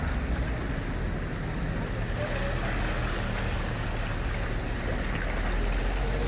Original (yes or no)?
yes